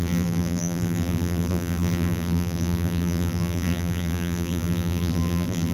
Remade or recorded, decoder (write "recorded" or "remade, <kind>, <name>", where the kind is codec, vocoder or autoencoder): remade, vocoder, BigVGAN v2